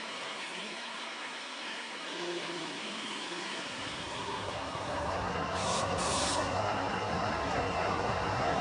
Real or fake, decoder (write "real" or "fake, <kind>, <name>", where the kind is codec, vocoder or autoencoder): fake, codec, SNAC